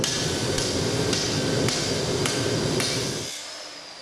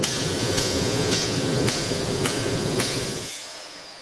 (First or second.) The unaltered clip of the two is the first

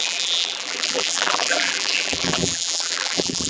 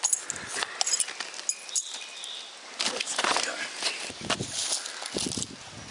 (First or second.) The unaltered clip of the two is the second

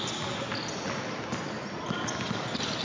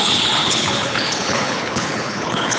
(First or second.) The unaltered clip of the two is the first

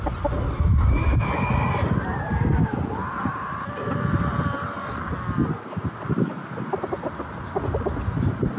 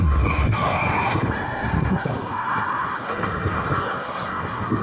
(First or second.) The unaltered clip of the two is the first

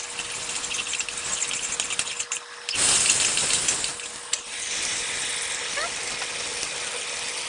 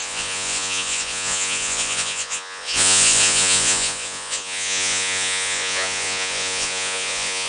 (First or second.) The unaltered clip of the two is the first